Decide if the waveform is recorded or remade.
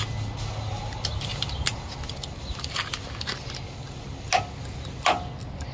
recorded